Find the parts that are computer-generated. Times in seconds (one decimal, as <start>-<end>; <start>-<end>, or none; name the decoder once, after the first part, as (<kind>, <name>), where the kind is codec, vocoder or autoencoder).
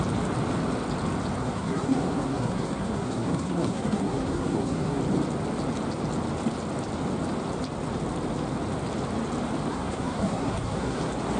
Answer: 1.4-5.0 (codec, SNAC); 9.7-11.0